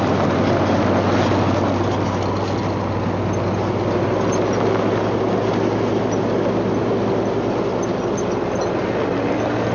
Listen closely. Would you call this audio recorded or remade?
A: recorded